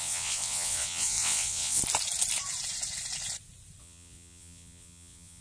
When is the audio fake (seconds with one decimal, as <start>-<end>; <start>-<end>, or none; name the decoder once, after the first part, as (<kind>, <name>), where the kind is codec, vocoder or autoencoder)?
0.0-1.8 (vocoder, WaveNeXt); 3.8-5.4